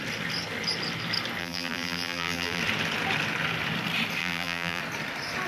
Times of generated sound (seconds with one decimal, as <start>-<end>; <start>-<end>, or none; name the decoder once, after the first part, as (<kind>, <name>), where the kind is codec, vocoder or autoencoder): 1.4-2.6 (vocoder, BigVGAN v2); 4.2-4.8